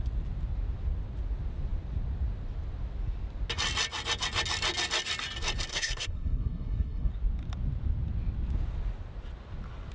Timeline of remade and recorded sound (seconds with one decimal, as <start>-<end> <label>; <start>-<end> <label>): 0.0-5.7 recorded; 5.7-7.1 remade; 7.1-9.9 recorded